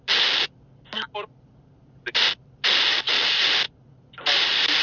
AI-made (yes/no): no